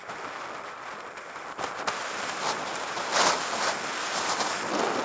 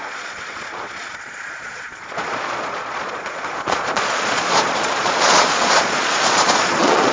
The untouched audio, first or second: first